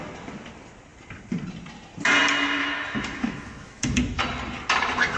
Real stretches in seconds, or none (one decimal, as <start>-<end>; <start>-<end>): 0.0-2.6; 4.2-5.2